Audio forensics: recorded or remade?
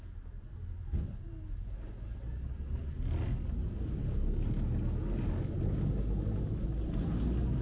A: recorded